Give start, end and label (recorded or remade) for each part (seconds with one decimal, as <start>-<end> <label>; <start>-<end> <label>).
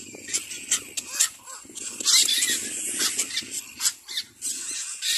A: 0.0-4.5 recorded; 4.5-5.2 remade